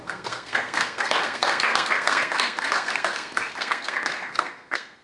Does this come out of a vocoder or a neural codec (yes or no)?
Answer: yes